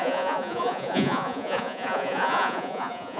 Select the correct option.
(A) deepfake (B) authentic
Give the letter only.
A